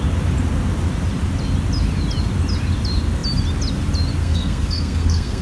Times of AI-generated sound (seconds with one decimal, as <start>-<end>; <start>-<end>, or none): 4.2-5.4